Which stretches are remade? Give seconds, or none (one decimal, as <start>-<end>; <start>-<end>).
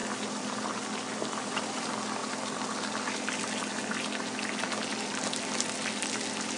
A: 0.0-1.8